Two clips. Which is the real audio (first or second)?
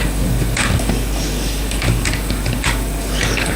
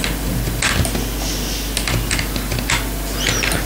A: second